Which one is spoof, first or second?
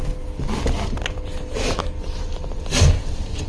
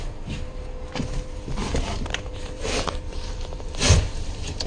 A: second